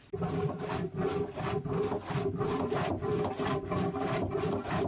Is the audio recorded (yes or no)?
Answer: yes